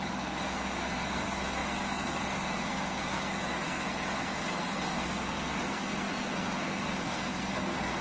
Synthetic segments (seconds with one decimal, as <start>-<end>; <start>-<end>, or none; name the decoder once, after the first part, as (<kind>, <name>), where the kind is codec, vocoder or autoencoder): 0.0-8.0 (codec, SNAC)